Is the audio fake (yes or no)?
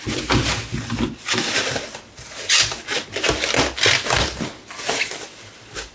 no